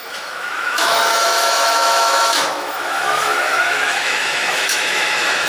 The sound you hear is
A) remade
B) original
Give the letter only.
A